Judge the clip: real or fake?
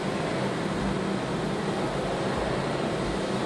real